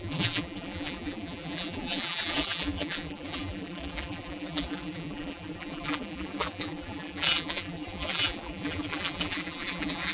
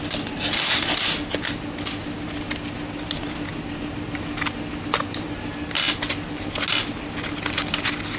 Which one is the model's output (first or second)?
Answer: first